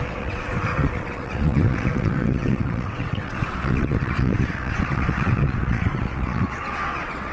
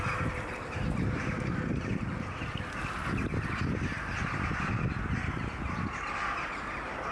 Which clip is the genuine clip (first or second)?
second